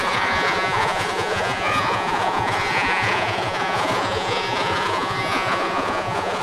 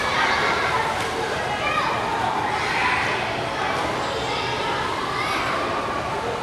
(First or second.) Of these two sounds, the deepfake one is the first